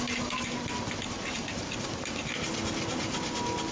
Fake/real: real